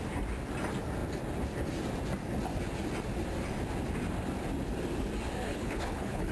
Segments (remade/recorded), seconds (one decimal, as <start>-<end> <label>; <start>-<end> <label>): 0.0-5.5 recorded; 5.5-6.3 remade